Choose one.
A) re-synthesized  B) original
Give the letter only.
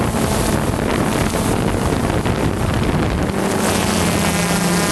B